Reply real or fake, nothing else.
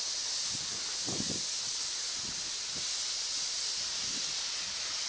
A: real